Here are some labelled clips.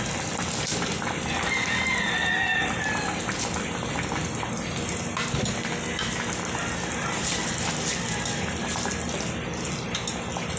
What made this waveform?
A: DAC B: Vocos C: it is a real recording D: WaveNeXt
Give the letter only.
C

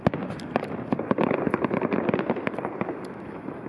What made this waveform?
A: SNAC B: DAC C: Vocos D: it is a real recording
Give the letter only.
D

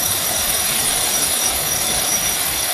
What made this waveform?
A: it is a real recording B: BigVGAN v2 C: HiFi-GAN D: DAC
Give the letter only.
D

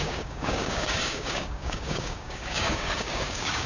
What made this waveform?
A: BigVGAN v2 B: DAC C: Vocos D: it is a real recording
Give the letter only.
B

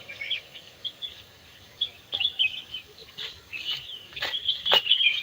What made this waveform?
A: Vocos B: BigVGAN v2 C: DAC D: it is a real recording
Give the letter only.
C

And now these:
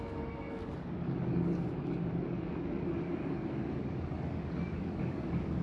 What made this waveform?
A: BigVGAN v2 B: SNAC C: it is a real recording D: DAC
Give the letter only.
D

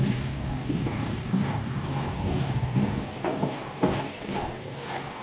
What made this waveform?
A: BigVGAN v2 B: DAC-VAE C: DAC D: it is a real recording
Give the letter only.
C